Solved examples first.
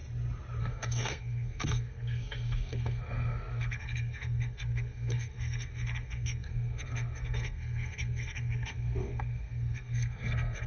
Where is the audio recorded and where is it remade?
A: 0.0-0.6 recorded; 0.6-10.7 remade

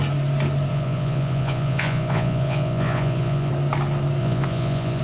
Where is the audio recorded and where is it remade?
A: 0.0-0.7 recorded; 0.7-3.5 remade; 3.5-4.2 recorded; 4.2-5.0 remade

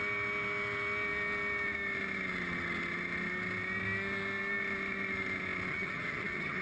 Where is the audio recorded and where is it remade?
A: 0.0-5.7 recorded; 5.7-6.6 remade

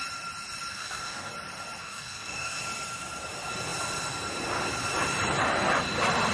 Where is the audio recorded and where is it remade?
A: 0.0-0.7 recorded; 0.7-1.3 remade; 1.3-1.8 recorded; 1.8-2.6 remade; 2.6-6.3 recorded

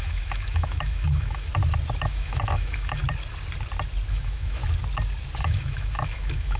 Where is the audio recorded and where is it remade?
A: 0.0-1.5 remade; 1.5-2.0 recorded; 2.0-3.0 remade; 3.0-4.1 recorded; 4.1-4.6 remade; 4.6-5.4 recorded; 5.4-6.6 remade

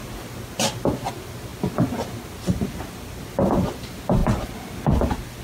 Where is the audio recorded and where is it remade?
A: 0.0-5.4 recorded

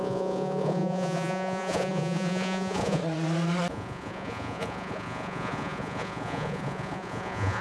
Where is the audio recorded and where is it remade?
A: 0.0-3.0 remade; 3.0-3.7 recorded; 3.7-7.6 remade

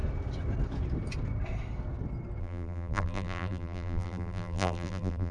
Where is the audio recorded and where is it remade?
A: 0.0-2.4 recorded; 2.4-5.3 remade